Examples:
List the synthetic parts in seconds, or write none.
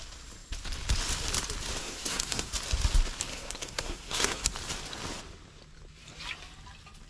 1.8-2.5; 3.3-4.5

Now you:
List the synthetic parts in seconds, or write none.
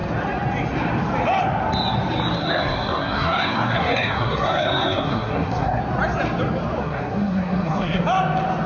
2.4-5.8; 6.8-8.0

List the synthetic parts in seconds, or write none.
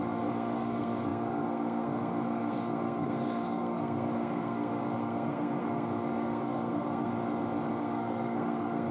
0.0-7.1; 7.7-8.9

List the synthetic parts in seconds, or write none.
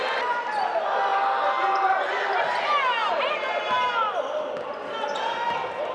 none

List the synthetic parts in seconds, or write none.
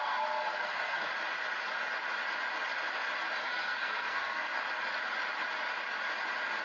0.0-1.1; 3.4-4.6